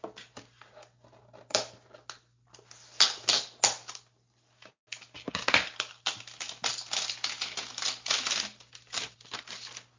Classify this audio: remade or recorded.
recorded